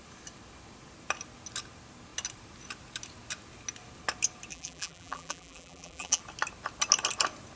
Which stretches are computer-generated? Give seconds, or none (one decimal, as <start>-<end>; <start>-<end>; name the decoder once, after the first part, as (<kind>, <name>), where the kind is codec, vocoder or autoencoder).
4.5-6.2 (vocoder, BigVGAN v2)